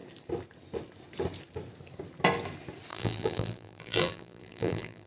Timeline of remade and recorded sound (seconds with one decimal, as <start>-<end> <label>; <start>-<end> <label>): 0.0-2.9 recorded; 2.9-5.1 remade